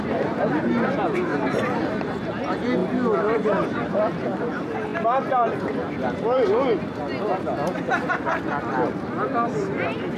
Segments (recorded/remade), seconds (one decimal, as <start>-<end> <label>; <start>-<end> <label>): 0.0-1.3 recorded; 1.3-2.3 remade; 2.3-2.8 recorded; 2.8-4.4 remade; 4.4-10.2 recorded